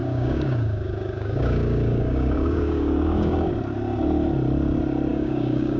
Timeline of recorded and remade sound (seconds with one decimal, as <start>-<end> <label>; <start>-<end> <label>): 0.0-3.5 remade; 3.5-5.1 recorded; 5.1-5.8 remade